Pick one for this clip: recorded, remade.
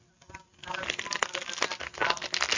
recorded